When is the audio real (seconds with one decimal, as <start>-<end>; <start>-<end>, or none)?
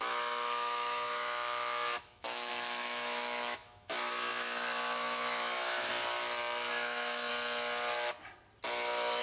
5.9-6.7; 7.3-9.2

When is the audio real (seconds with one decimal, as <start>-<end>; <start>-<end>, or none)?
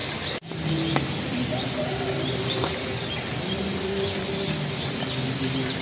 0.0-5.8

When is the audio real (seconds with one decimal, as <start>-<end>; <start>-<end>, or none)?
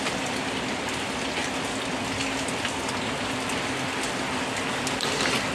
0.0-5.5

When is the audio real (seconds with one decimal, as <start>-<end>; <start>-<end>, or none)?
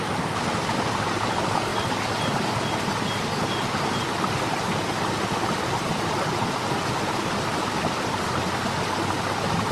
0.0-9.7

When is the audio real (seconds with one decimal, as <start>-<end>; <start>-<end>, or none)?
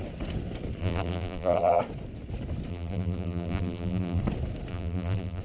0.0-0.8; 1.8-2.7; 4.2-4.7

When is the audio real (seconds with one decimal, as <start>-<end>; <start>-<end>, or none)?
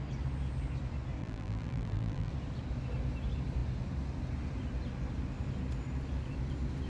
0.0-1.2; 2.3-6.9